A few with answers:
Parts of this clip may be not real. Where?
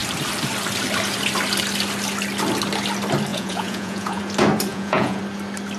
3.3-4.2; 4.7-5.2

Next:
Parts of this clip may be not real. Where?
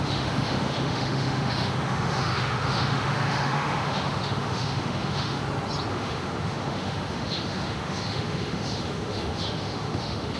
0.0-5.4; 5.9-10.4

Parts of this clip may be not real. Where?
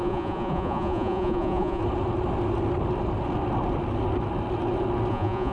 0.0-1.8; 5.1-5.5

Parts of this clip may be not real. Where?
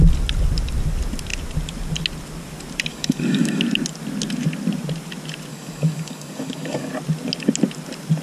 2.9-3.6; 5.5-6.9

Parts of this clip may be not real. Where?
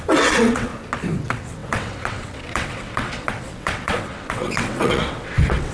0.0-0.7; 1.2-5.7